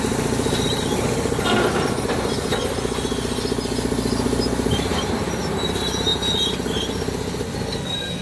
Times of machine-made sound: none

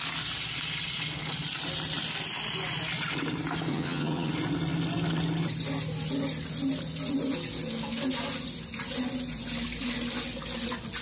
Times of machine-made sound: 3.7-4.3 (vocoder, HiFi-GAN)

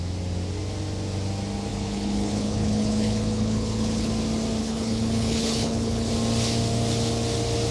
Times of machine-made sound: 1.7-4.1 (codec, HILCodec); 4.6-6.1

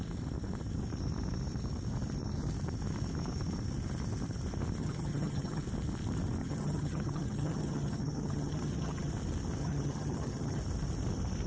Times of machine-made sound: 4.8-5.6 (vocoder, HiFi-GAN); 6.4-9.1; 9.6-10.6